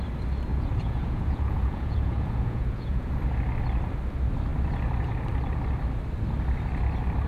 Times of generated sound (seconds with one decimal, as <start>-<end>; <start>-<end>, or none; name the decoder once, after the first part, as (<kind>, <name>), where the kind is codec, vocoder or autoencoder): 0.5-3.1 (vocoder, Vocos)